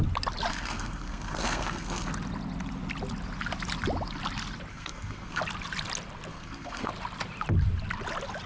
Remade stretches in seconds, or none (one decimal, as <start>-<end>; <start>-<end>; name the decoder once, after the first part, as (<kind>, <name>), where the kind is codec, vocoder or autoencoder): 0.5-2.1 (codec, SNAC); 4.7-5.4; 6.3-6.9